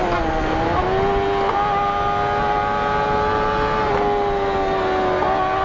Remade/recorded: recorded